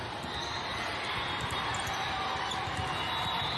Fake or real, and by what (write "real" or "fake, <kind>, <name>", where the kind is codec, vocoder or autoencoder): real